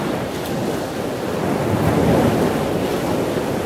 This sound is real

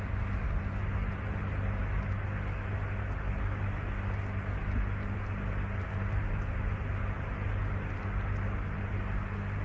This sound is real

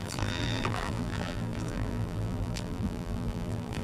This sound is fake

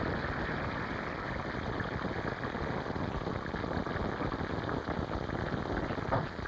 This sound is real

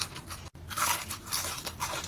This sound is real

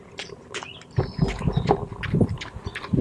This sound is fake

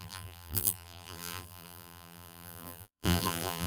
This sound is fake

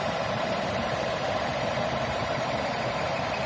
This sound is fake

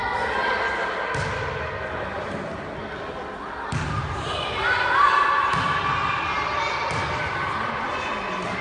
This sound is real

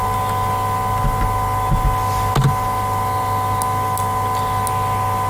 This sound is real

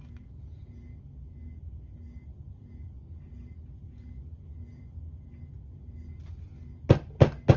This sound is real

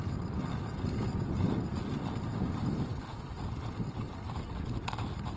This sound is real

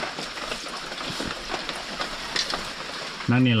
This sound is real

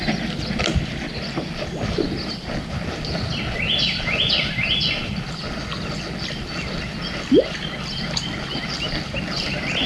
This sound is fake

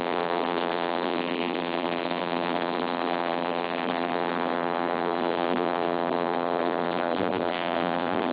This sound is fake